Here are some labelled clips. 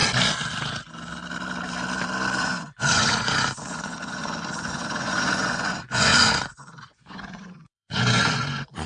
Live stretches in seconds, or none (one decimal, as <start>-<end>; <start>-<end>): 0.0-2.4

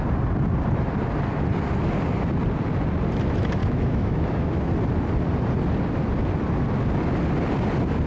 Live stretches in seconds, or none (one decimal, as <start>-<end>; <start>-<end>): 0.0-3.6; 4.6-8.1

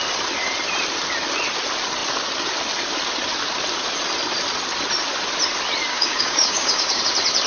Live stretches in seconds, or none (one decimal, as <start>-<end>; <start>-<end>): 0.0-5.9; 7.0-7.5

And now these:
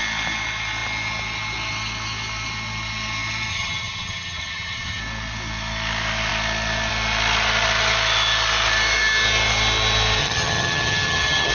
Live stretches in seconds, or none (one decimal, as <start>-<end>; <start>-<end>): 0.0-3.5; 5.0-10.2